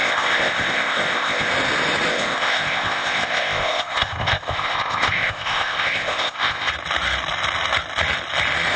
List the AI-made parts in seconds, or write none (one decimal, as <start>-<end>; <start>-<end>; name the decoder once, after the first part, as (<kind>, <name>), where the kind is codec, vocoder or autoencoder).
0.0-1.5 (codec, ZipCodec); 2.1-6.7